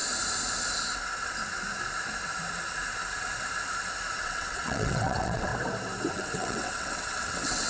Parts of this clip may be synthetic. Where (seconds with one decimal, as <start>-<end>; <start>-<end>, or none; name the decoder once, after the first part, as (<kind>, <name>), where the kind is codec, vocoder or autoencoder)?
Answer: 4.2-5.5 (vocoder, WaveNeXt); 6.1-7.7